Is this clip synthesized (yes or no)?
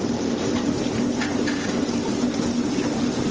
yes